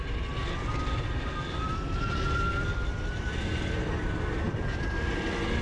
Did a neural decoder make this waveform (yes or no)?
no